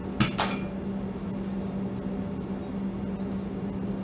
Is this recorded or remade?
recorded